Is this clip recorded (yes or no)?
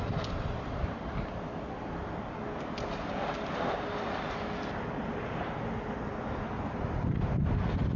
yes